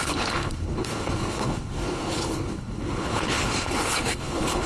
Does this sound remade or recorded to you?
remade